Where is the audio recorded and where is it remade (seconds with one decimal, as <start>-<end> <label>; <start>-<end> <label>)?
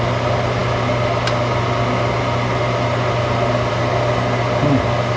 0.0-5.2 recorded